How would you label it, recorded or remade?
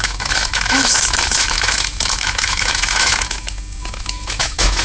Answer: remade